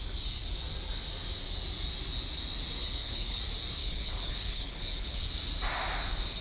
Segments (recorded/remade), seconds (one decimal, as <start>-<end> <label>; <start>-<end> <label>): 0.0-2.8 recorded; 2.8-3.4 remade; 3.4-3.8 recorded; 3.8-5.3 remade; 5.3-6.4 recorded